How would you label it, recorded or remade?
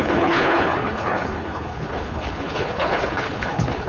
remade